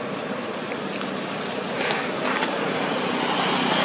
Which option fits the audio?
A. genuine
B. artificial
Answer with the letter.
A